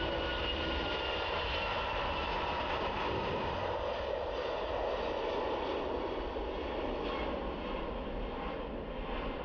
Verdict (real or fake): real